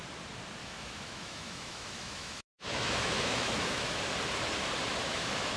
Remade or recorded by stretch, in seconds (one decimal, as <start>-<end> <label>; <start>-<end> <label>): 0.0-0.6 recorded; 0.6-4.0 remade; 4.0-5.0 recorded; 5.0-5.6 remade

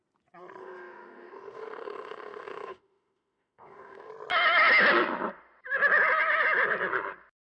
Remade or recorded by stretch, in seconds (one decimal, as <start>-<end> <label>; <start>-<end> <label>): 0.0-0.6 recorded; 0.6-4.1 remade; 4.1-7.5 recorded

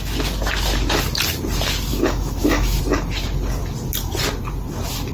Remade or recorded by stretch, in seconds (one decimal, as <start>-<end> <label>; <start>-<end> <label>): 0.0-1.9 recorded; 1.9-2.8 remade; 2.8-5.1 recorded